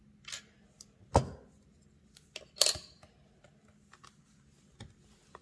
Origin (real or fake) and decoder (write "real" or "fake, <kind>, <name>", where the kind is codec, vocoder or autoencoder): real